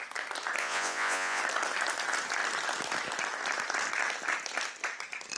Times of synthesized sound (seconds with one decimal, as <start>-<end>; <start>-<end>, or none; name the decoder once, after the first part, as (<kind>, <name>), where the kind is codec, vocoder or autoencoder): 0.6-1.4 (vocoder, Vocos)